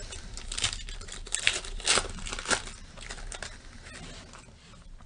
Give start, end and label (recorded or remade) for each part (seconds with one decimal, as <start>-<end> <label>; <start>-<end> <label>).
0.0-5.1 recorded